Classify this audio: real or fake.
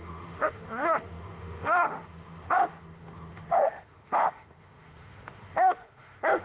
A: fake